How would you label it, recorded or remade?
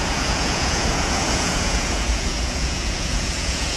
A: remade